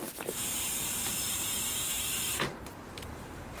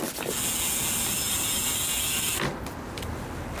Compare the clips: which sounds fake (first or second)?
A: first